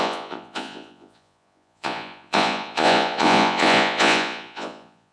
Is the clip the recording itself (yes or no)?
no